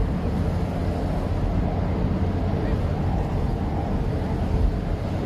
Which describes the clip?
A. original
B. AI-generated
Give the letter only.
A